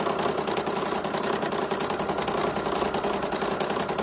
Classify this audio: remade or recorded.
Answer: recorded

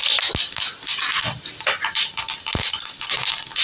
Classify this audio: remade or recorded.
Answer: recorded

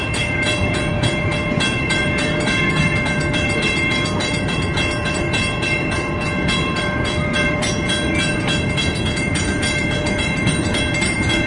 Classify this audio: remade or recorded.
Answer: remade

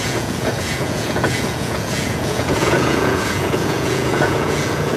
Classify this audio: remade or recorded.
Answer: remade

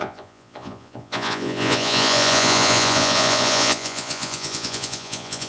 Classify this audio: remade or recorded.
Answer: remade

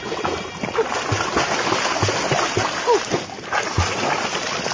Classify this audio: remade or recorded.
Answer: recorded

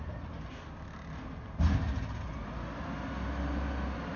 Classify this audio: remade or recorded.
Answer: recorded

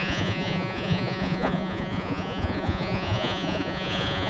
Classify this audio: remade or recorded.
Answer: remade